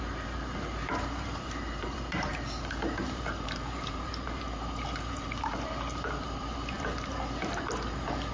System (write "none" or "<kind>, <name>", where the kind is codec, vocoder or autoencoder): vocoder, BigVGAN v2